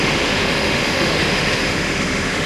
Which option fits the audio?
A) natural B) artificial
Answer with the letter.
B